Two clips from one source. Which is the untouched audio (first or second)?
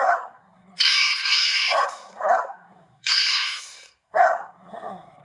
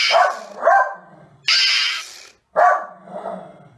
second